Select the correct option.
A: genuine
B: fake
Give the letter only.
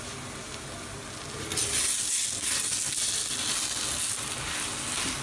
A